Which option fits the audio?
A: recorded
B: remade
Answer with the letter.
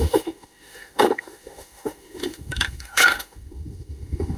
B